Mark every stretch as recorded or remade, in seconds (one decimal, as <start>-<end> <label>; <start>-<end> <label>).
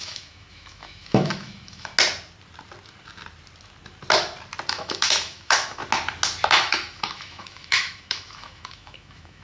0.0-1.9 remade; 1.9-4.7 recorded; 4.7-5.8 remade; 5.8-6.5 recorded; 6.5-9.4 remade